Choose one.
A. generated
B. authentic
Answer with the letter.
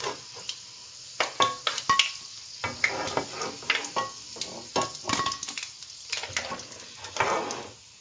B